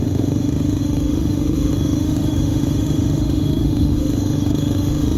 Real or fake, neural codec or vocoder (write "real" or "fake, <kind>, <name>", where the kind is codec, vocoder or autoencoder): fake, autoencoder, DAC-VAE